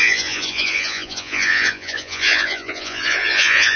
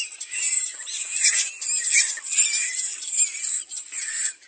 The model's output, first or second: first